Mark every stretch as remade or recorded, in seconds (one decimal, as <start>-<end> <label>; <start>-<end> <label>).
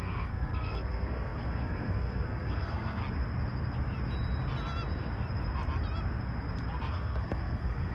0.0-3.0 remade; 3.0-6.9 recorded; 6.9-7.9 remade